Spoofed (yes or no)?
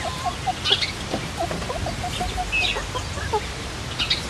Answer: no